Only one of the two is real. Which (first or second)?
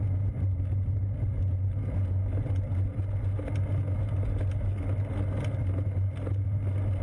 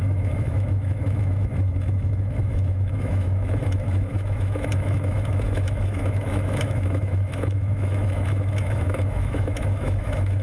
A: first